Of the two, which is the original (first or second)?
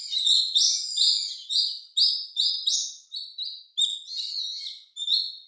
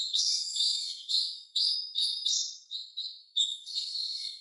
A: first